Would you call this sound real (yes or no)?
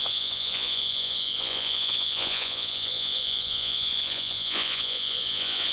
no